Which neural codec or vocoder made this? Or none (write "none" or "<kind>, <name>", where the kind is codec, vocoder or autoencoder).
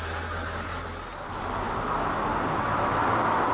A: none